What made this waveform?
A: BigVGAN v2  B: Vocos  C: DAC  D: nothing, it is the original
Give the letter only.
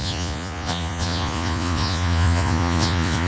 B